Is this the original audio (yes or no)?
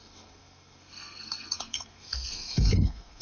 no